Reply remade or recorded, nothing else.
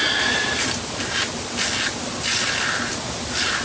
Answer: recorded